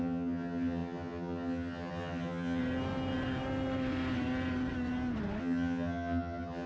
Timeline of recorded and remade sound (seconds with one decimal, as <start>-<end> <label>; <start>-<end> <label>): 0.0-2.6 remade; 2.6-5.4 recorded; 5.4-6.7 remade